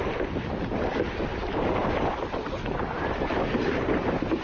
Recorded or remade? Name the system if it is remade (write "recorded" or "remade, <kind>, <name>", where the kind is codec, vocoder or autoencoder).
recorded